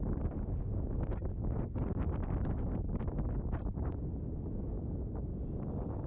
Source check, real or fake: real